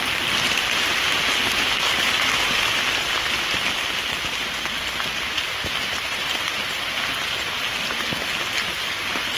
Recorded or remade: recorded